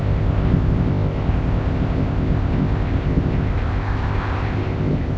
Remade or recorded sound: remade